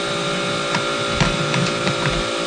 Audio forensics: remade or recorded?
recorded